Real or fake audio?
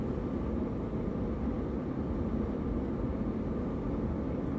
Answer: real